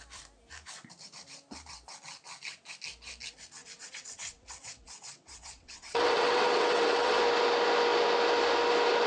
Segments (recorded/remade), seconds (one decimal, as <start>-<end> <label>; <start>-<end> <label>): 0.0-3.6 recorded; 3.6-7.2 remade; 7.2-9.1 recorded